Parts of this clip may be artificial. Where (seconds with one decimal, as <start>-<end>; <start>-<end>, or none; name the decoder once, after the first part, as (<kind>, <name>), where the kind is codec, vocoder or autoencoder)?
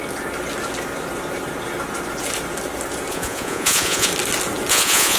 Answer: 3.1-4.1 (vocoder, Vocos); 4.7-5.2